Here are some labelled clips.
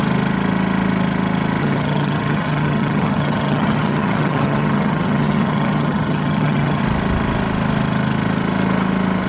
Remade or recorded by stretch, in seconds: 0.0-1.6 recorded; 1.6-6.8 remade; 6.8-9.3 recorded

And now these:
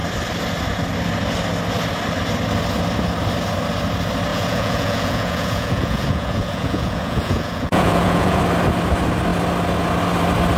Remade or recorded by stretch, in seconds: 0.0-4.3 recorded; 4.3-8.4 remade; 8.4-10.6 recorded

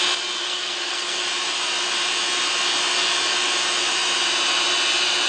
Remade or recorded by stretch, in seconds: 0.0-0.4 recorded; 0.4-1.2 remade; 1.2-5.3 recorded